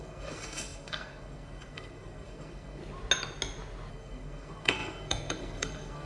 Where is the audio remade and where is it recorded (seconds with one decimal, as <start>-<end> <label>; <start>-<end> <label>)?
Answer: 0.0-2.8 remade; 2.8-3.9 recorded; 3.9-6.1 remade